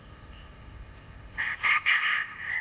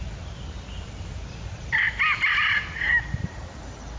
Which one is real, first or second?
second